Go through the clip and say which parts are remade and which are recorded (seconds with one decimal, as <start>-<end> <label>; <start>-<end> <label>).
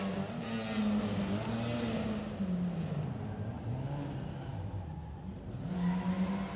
0.0-6.6 recorded